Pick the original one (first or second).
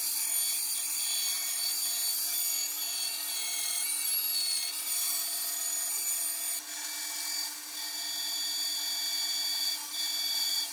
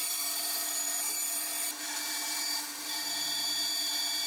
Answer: first